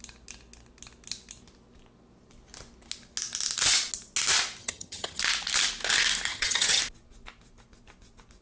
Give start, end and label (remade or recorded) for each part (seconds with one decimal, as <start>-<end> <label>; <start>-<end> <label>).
0.0-4.6 recorded; 4.6-5.2 remade; 5.2-6.3 recorded; 6.3-6.8 remade; 6.8-8.4 recorded